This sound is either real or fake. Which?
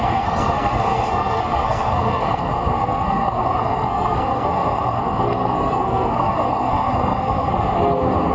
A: fake